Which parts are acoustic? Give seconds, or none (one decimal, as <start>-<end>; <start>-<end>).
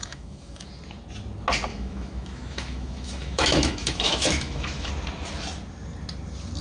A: 0.7-1.7; 4.9-6.6